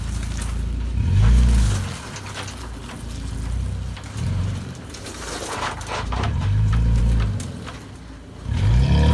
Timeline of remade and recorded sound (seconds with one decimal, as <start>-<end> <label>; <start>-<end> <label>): 0.0-4.4 recorded; 4.4-7.0 remade; 7.0-9.1 recorded